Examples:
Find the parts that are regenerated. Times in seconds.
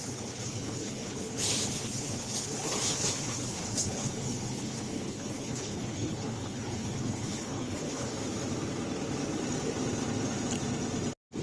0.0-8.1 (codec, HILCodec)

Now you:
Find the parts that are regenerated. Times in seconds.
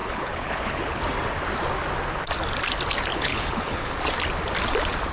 0.0-1.0 (codec, HILCodec); 3.1-3.9